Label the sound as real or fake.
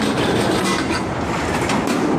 real